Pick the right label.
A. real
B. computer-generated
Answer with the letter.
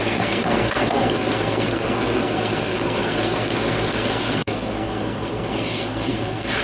B